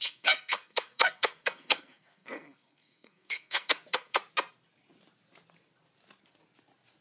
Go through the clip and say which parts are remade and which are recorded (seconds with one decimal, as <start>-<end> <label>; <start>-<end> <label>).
0.0-4.2 remade; 4.2-7.0 recorded